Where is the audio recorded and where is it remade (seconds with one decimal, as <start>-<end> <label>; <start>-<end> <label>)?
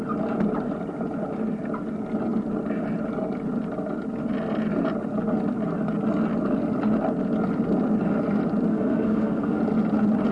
0.0-8.7 recorded; 8.7-9.6 remade; 9.6-10.3 recorded